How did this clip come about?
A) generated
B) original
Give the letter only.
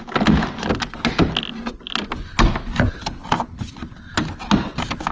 B